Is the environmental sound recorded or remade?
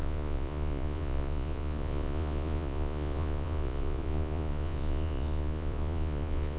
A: remade